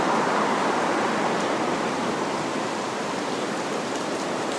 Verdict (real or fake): fake